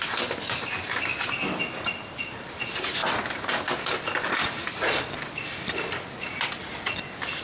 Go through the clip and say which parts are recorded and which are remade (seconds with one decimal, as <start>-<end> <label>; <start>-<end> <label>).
0.0-7.4 recorded